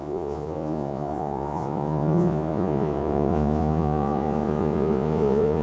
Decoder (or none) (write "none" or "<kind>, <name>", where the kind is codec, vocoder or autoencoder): vocoder, Vocos